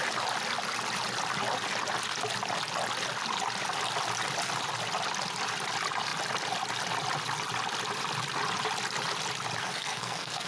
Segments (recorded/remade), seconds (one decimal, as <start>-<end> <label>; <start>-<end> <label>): 0.0-9.6 recorded; 9.6-10.5 remade